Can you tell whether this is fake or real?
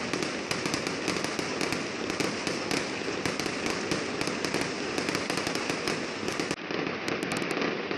real